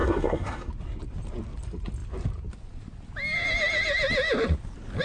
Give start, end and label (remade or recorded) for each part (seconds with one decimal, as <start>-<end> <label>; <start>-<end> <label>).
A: 0.0-0.7 remade; 0.7-5.0 recorded